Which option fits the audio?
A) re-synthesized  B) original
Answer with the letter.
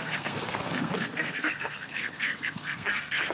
A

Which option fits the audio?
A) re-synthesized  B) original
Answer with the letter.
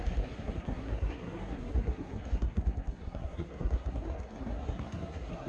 A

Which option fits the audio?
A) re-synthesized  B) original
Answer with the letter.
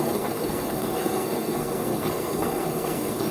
A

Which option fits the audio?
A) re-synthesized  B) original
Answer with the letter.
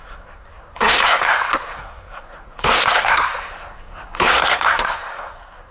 A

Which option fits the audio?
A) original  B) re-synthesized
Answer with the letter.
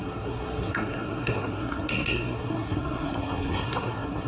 B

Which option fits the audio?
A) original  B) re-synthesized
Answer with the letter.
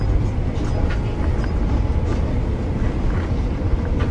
A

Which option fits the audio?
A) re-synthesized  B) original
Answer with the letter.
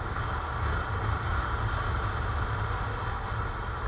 B